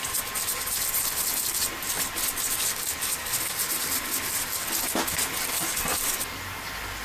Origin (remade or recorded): recorded